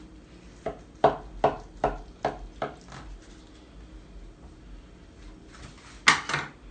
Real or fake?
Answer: real